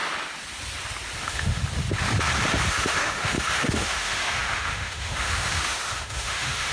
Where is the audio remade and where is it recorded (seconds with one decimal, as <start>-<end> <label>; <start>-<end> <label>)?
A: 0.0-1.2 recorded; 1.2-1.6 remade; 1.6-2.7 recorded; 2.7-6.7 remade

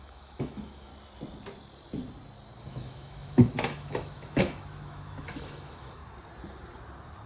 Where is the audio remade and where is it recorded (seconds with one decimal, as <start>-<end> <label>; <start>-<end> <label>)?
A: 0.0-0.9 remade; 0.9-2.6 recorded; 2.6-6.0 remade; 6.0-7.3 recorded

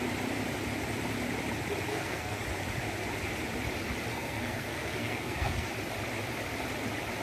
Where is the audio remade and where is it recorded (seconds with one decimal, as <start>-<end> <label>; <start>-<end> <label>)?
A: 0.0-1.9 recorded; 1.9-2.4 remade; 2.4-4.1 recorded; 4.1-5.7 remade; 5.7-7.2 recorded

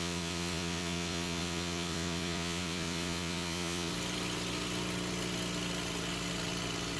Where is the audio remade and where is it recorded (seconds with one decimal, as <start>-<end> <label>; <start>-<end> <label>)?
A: 0.0-3.9 remade; 3.9-7.0 recorded

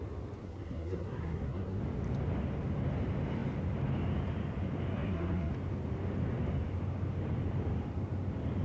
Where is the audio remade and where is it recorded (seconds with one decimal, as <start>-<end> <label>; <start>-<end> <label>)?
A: 0.0-0.4 recorded; 0.4-1.8 remade; 1.8-4.9 recorded; 4.9-5.5 remade; 5.5-8.6 recorded